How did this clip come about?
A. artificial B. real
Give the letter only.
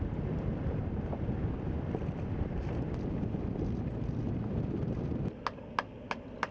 B